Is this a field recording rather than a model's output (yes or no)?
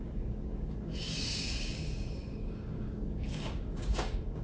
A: no